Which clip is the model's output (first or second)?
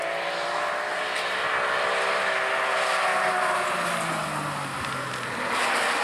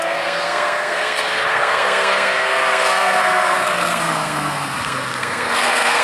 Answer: second